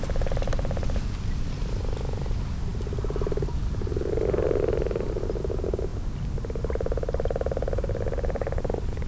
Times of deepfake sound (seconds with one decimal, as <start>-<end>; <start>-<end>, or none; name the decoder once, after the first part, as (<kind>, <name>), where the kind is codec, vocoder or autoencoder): none